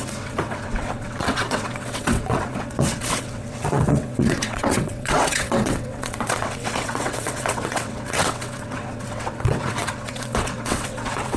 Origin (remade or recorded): remade